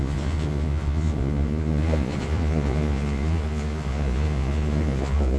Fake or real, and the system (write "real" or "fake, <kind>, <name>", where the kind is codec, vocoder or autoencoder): fake, vocoder, Vocos